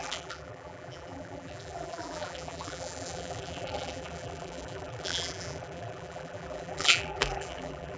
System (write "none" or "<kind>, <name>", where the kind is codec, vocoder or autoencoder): vocoder, BigVGAN v2